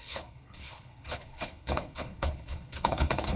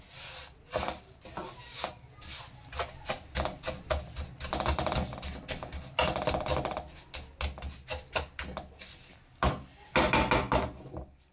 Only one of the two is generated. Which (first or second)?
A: first